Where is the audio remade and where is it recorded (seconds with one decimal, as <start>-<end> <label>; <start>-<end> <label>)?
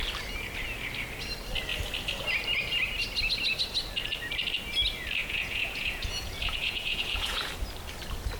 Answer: 0.0-5.2 recorded; 5.2-7.5 remade; 7.5-8.4 recorded